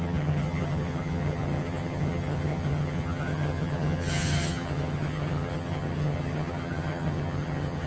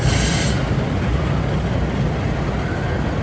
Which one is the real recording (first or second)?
second